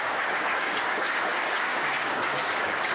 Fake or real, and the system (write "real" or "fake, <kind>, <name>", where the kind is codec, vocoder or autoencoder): fake, codec, DAC